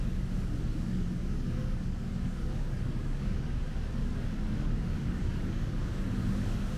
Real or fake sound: fake